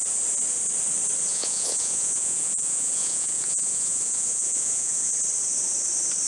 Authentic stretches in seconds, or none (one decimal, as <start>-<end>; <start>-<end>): 0.0-1.3; 5.1-6.3